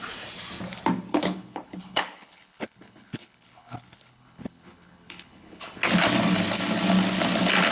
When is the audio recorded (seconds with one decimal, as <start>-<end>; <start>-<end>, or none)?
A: 0.0-1.1; 5.7-7.7

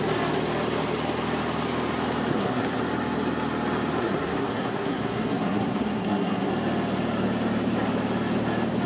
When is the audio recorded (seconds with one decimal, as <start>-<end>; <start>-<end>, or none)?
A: 0.0-2.3; 2.8-4.0; 6.5-8.9

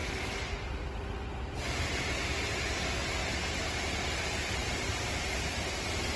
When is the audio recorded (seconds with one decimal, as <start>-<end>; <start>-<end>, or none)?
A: 0.0-3.2; 5.0-6.2

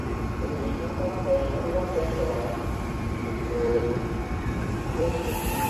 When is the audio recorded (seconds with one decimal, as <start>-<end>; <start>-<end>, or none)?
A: none